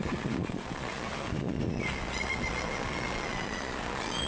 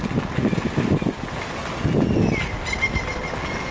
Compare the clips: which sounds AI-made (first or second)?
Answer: first